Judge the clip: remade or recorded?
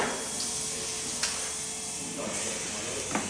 recorded